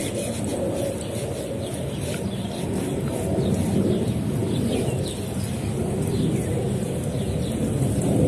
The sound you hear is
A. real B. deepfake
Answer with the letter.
A